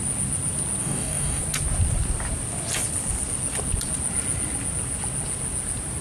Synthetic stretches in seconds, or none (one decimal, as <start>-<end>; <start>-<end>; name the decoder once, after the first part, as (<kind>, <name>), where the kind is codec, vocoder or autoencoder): 0.8-1.4 (codec, DAC)